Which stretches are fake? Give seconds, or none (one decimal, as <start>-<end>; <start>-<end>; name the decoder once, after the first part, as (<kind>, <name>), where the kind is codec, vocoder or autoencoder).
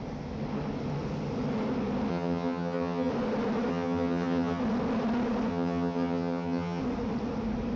2.1-3.1 (vocoder, HiFi-GAN); 3.7-4.6; 5.5-6.8